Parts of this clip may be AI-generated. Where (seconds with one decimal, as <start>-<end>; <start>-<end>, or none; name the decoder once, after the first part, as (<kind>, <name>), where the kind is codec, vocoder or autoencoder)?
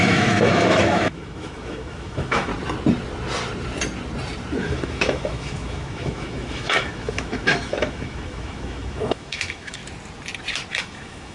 0.0-2.5 (autoencoder, DAC-VAE); 4.6-9.8; 10.7-11.3